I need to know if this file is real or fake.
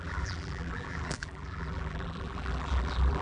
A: fake